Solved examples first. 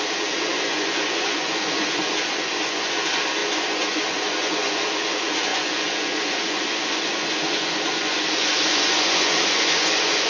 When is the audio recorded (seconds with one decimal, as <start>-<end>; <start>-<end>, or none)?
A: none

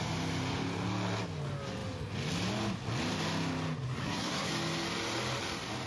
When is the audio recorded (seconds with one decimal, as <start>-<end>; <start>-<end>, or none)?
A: 0.0-4.0; 4.5-5.9

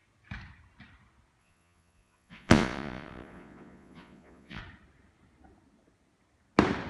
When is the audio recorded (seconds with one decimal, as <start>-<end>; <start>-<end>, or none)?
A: 0.0-1.4; 4.6-6.9

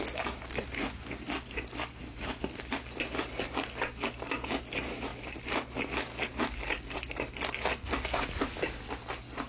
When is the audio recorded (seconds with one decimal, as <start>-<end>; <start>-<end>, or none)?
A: 0.0-9.5

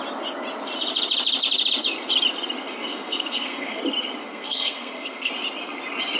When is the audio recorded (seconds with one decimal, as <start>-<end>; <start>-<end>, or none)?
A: 0.0-2.8; 3.8-4.2; 5.3-6.2